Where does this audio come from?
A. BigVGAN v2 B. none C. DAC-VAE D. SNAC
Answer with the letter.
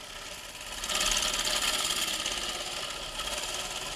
B